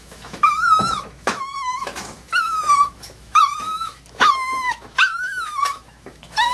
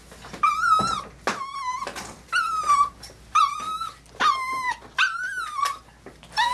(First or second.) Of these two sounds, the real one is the second